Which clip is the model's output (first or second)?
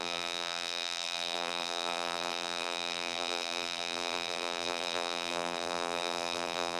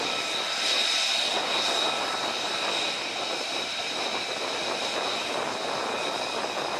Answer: first